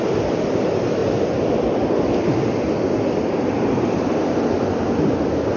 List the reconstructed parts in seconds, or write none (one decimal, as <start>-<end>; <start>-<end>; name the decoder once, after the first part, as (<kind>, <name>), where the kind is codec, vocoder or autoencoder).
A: 1.0-3.3 (vocoder, BigVGAN v2)